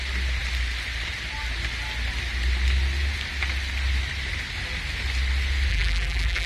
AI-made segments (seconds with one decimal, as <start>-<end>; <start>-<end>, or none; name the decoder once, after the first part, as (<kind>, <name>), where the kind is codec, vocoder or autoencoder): 5.7-6.5 (vocoder, BigVGAN v2)